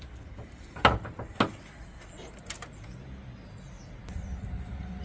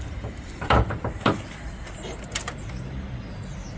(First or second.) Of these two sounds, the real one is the first